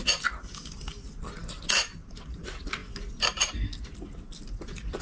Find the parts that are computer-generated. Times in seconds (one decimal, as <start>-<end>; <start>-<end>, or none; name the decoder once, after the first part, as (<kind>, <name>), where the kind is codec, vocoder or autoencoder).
none